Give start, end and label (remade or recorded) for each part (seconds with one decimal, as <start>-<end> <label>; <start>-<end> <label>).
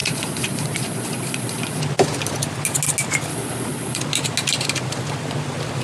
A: 0.0-1.8 remade; 1.8-3.3 recorded; 3.3-4.0 remade; 4.0-5.8 recorded